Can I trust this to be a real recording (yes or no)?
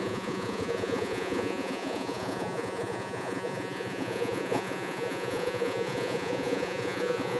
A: no